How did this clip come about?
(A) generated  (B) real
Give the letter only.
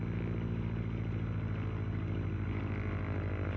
B